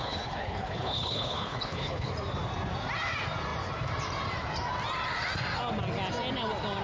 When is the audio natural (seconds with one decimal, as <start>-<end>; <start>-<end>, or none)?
2.1-6.8